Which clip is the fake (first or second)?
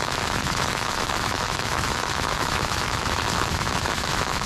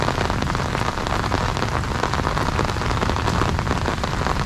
first